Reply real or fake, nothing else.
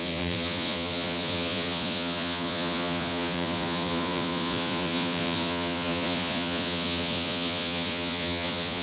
fake